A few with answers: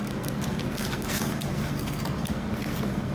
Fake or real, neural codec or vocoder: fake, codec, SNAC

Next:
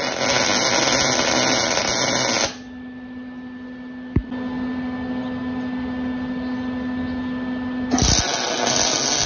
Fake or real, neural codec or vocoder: real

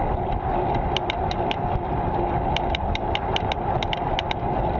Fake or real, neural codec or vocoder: real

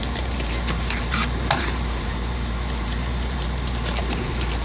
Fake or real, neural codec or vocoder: fake, vocoder, BigVGAN v2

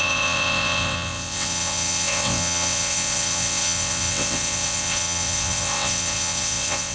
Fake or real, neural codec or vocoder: fake, vocoder, WaveNeXt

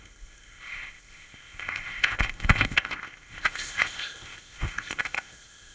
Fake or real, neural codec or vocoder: fake, codec, ZipCodec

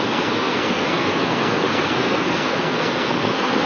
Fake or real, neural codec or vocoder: fake, codec, SNAC